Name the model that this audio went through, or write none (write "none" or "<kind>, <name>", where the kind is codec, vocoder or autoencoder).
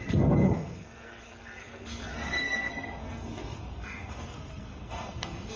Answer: codec, SNAC